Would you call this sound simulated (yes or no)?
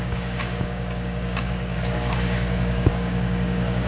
yes